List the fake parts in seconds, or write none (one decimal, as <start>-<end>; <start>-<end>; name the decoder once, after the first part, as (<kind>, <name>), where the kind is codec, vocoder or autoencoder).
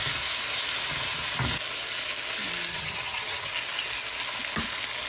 2.7-3.5 (vocoder, HiFi-GAN)